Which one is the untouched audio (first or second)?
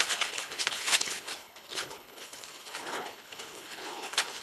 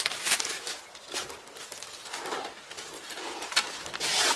second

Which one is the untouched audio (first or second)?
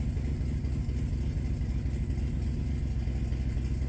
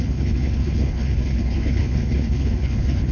first